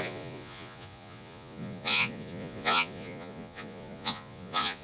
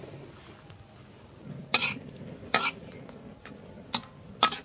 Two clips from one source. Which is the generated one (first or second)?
first